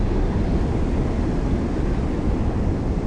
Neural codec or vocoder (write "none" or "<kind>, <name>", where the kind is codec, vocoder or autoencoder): none